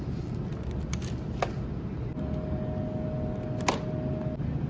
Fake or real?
real